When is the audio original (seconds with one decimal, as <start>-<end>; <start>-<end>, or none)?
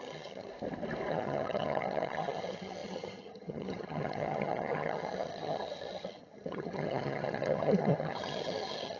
0.5-1.1